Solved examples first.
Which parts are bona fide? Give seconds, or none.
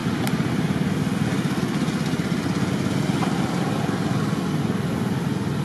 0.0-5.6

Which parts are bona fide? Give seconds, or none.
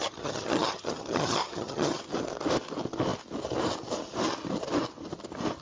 2.0-5.6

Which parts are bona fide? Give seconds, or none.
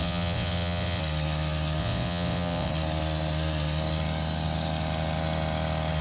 1.0-1.8; 2.7-6.0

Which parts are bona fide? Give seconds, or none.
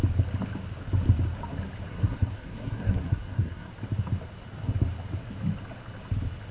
0.0-1.9; 3.7-6.5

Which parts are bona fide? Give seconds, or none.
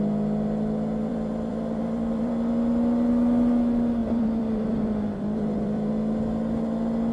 0.0-1.0; 2.3-4.0; 5.9-7.1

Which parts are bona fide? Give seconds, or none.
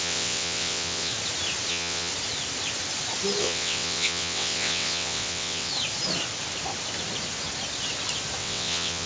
1.1-1.7; 2.1-3.4; 5.7-8.4